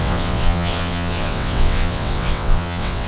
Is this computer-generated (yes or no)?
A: yes